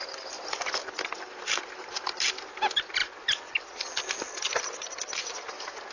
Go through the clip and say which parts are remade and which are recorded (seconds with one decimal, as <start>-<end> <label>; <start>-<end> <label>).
0.0-5.9 recorded